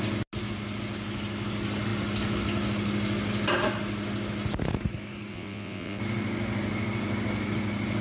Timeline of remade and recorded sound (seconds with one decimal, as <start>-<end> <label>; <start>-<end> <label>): 0.0-5.3 recorded; 5.3-6.0 remade; 6.0-8.0 recorded